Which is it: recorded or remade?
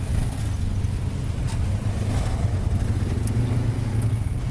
recorded